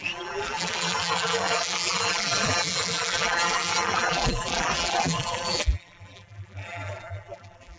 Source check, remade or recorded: remade